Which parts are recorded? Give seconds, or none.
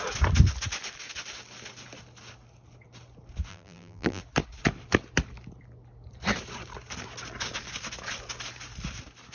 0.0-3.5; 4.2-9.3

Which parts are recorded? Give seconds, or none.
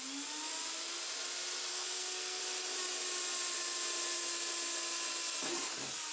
0.0-1.7; 2.4-6.1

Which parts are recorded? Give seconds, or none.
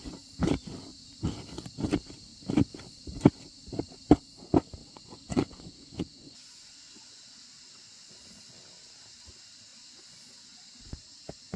0.0-4.8; 8.1-9.7; 10.8-11.6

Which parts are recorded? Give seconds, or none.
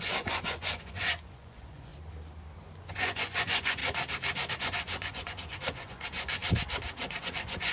1.9-2.8; 3.8-4.5; 6.4-7.2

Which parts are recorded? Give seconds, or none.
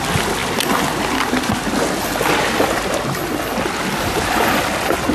0.0-5.1